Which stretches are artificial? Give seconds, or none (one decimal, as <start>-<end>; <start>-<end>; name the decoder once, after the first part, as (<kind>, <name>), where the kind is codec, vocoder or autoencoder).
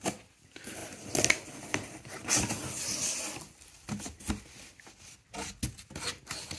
none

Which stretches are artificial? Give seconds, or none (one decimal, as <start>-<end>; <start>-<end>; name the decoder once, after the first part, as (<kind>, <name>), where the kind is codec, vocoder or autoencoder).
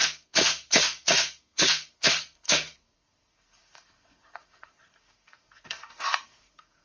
0.0-6.8 (codec, SNAC)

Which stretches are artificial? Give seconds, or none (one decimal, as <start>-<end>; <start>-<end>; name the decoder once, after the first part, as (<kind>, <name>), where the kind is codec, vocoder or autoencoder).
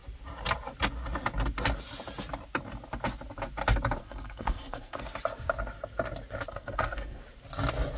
4.0-5.0 (codec, SNAC); 6.5-7.2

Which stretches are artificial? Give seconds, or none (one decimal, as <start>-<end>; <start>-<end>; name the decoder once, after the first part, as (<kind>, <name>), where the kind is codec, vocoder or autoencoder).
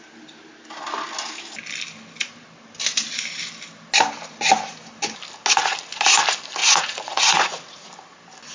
6.6-7.9 (vocoder, Vocos)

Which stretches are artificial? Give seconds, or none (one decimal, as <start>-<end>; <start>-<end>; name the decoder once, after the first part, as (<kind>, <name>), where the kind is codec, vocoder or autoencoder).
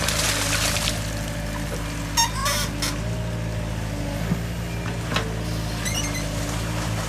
none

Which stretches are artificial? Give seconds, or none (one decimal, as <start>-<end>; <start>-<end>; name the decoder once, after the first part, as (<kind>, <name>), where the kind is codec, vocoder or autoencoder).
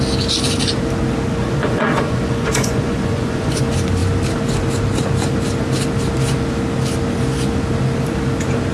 1.3-3.6 (vocoder, Vocos)